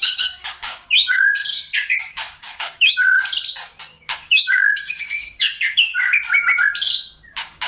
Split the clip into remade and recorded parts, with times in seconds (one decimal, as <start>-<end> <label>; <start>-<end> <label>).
0.0-3.3 remade; 3.3-3.9 recorded; 3.9-5.9 remade; 5.9-7.3 recorded; 7.3-7.7 remade